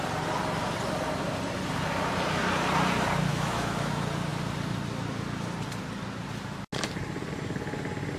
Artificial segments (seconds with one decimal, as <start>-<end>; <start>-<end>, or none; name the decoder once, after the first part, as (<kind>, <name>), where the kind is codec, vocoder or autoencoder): 3.3-3.9 (autoencoder, DAC-VAE)